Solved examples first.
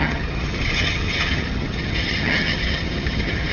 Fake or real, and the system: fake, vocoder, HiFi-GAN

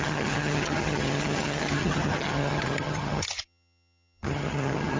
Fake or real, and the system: fake, vocoder, HiFi-GAN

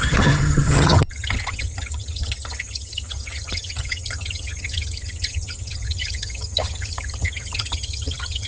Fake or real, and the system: fake, vocoder, HiFi-GAN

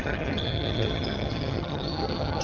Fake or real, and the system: fake, vocoder, HiFi-GAN